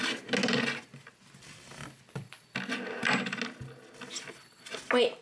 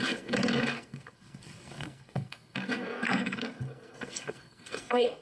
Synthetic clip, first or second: second